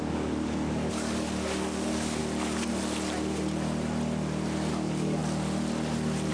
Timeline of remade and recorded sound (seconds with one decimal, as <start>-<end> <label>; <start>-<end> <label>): 0.0-2.2 remade; 2.2-4.7 recorded; 4.7-5.2 remade; 5.2-6.3 recorded